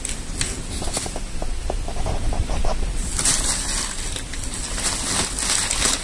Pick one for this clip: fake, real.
real